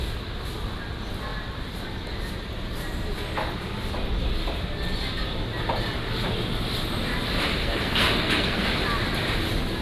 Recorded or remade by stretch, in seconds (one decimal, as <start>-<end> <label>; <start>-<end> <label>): 0.0-7.6 recorded; 7.6-8.7 remade; 8.7-9.8 recorded